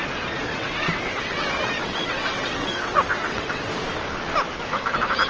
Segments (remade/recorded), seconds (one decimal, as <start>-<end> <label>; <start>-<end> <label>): 0.0-0.5 recorded; 0.5-3.7 remade; 3.7-5.3 recorded